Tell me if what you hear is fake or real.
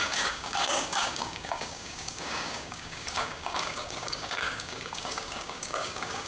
fake